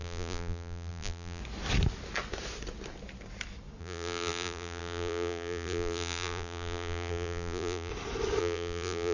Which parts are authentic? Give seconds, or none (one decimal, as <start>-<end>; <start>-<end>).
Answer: 1.4-3.8; 7.9-8.4